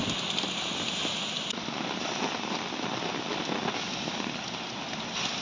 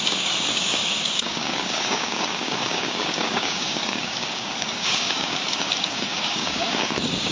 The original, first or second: first